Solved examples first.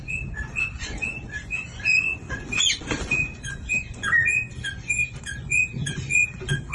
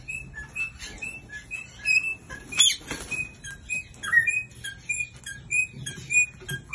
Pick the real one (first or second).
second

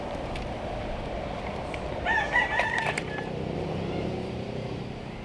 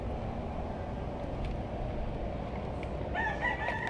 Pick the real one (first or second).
second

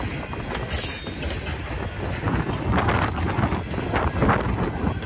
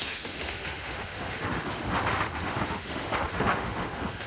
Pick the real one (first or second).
first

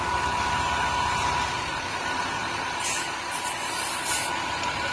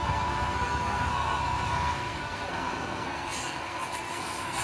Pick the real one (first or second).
first